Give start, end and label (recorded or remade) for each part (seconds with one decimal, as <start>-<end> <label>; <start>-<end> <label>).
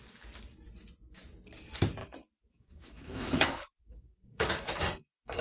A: 0.0-2.0 recorded; 2.0-5.4 remade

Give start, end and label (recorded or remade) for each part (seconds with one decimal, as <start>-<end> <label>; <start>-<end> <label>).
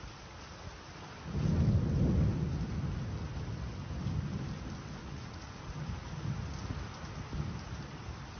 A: 0.0-5.0 recorded; 5.0-5.6 remade; 5.6-8.4 recorded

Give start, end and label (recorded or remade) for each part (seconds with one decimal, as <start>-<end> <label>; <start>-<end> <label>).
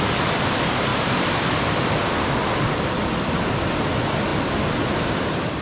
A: 0.0-5.6 recorded